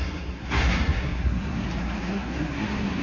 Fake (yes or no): yes